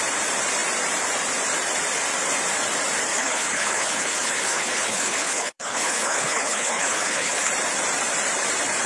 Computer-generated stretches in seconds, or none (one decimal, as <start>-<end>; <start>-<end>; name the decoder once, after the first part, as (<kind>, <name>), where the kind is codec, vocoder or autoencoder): 3.1-7.5 (codec, HILCodec)